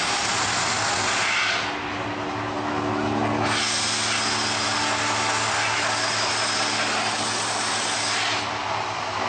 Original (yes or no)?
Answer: yes